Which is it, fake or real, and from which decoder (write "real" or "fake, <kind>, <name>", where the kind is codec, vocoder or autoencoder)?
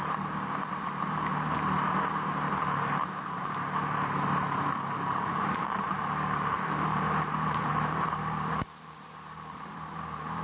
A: fake, vocoder, BigVGAN v2